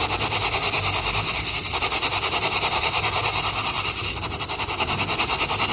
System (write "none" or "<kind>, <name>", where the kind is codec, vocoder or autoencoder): none